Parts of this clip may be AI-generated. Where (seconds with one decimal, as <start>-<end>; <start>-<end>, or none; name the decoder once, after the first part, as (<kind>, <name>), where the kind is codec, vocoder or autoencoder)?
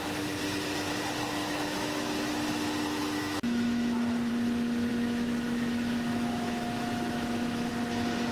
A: 1.4-2.3 (autoencoder, DAC-VAE); 3.0-4.3; 4.9-7.7